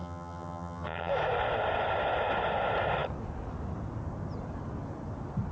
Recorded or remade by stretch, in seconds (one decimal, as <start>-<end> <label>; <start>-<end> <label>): 0.0-1.1 remade; 1.1-5.5 recorded